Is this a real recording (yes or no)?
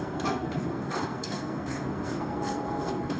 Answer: no